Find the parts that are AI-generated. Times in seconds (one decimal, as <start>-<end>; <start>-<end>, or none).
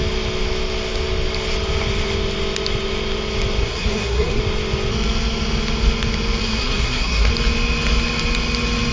3.6-4.4; 6.4-7.3